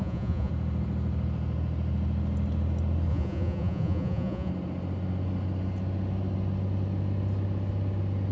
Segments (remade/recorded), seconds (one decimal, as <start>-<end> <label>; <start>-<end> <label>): 0.0-0.5 remade; 0.5-3.1 recorded; 3.1-4.5 remade; 4.5-8.3 recorded